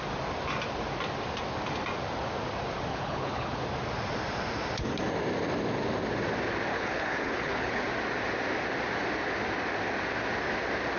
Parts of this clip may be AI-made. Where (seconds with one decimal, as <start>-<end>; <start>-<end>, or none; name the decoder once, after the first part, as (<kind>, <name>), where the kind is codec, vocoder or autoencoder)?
2.9-3.6 (codec, HILCodec); 6.7-7.9